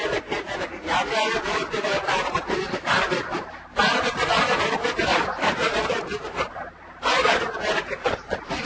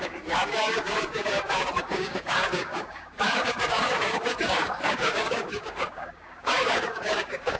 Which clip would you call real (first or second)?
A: first